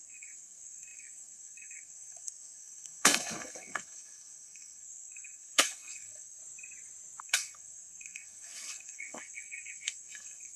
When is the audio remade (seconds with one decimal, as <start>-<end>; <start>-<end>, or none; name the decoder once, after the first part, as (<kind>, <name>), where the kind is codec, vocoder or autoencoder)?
0.0-6.4 (codec, SNAC); 7.2-10.6